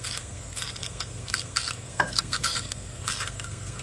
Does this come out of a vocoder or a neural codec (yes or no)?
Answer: yes